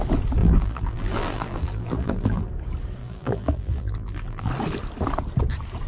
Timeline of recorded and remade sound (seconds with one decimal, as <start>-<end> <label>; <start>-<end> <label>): 0.0-0.4 recorded; 0.4-2.5 remade; 2.5-3.0 recorded; 3.0-4.5 remade; 4.5-5.9 recorded